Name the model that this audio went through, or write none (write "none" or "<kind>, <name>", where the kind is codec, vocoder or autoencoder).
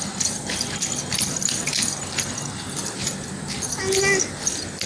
none